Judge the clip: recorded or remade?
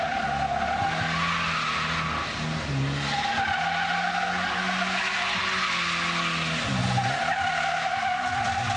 recorded